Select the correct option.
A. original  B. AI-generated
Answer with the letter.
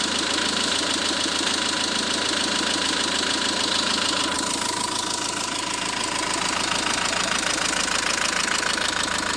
A